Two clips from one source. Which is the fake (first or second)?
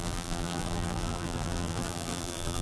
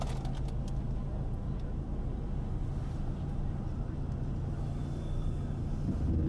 first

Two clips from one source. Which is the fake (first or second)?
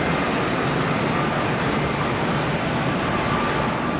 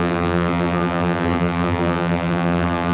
second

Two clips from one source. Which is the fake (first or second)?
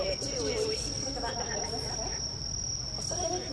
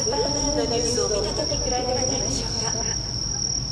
first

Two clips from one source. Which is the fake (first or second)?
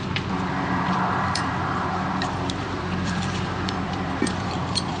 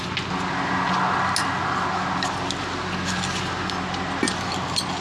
first